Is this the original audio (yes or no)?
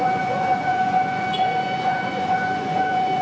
no